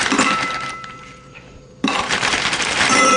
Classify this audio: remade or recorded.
remade